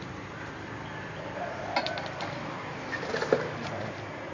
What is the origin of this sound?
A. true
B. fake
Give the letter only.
A